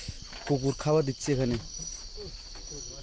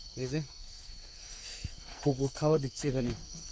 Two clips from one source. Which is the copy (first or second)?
second